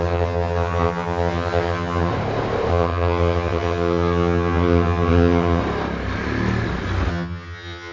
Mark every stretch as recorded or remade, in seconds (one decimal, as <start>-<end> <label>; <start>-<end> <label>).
0.0-2.1 remade; 2.1-2.7 recorded; 2.7-5.6 remade; 5.6-7.1 recorded; 7.1-7.9 remade